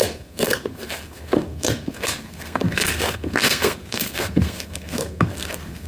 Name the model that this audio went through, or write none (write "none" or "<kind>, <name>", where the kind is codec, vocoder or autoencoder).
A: codec, SNAC